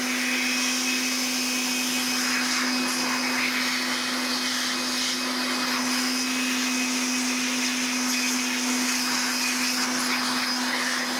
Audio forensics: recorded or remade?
recorded